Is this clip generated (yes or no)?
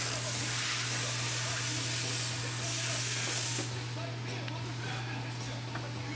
no